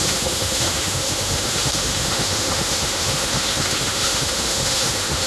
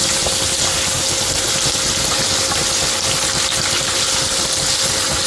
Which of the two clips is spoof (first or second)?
first